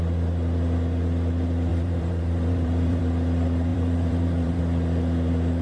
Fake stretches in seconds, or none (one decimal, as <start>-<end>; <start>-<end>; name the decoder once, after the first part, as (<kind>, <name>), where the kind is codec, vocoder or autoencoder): 1.7-3.0 (vocoder, BigVGAN v2); 3.7-4.6